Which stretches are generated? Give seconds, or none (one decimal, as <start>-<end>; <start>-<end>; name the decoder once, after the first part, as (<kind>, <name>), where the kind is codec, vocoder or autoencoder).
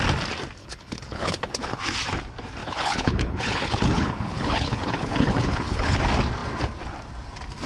0.6-1.8 (codec, HILCodec); 2.6-6.0